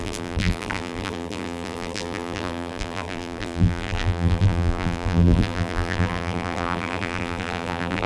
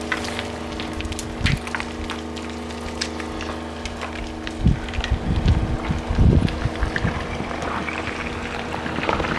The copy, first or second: first